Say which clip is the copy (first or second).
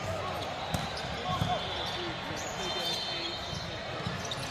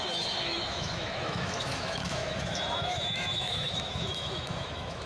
second